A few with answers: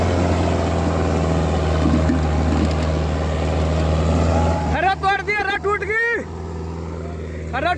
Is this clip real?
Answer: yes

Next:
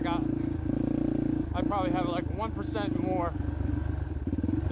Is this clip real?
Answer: yes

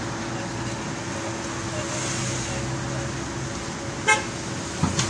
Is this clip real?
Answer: yes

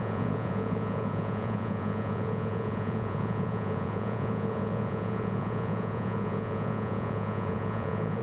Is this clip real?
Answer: no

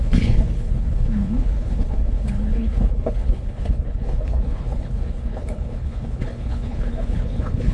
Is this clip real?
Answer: no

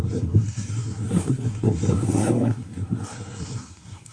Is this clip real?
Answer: no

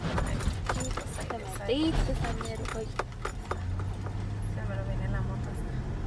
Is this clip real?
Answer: yes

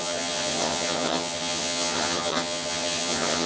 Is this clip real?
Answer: no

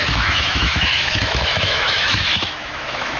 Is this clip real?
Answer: no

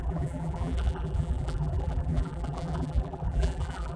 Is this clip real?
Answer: no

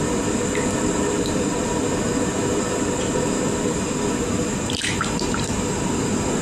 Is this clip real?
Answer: no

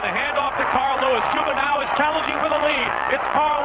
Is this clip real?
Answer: no